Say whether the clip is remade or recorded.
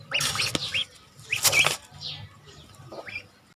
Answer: recorded